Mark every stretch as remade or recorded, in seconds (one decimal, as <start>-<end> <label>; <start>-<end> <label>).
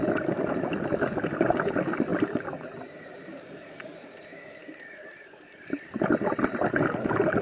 0.0-2.1 recorded; 2.1-3.0 remade; 3.0-7.4 recorded